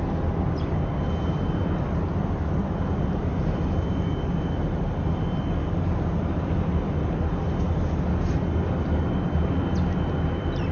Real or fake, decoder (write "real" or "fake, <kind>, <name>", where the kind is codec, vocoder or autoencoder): real